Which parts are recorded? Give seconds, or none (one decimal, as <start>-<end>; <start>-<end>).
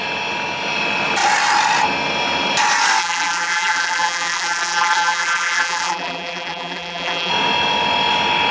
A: 0.0-3.0; 7.3-8.5